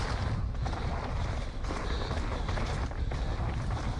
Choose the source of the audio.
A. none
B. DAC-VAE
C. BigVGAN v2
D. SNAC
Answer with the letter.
A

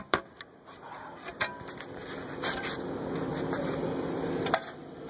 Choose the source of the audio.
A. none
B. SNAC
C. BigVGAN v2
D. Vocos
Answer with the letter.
C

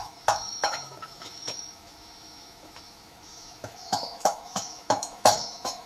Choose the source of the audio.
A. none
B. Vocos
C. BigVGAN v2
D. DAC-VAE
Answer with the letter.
D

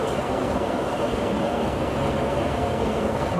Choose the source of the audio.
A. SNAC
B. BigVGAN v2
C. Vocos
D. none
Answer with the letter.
A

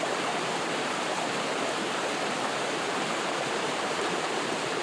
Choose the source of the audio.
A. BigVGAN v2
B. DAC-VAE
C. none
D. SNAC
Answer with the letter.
A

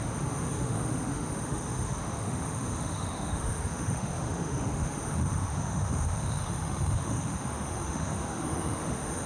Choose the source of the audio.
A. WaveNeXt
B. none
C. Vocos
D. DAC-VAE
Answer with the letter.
D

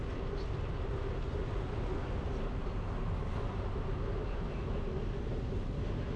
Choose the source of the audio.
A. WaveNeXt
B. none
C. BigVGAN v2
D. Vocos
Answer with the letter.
B